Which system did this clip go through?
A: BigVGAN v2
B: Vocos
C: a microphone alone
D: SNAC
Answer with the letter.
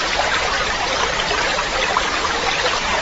A